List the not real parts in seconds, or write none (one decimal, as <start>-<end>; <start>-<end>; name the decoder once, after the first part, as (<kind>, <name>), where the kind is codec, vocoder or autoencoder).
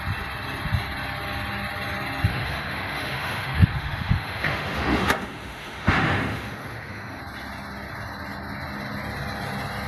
2.3-7.2 (autoencoder, DAC-VAE)